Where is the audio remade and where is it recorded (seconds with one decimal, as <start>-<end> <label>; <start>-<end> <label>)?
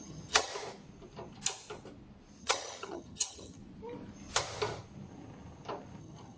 0.0-0.5 remade; 0.5-2.4 recorded; 2.4-3.6 remade; 3.6-6.0 recorded; 6.0-6.4 remade